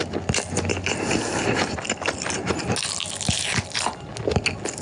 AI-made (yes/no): no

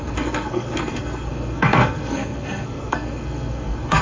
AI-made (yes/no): yes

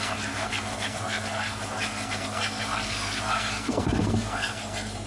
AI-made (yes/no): yes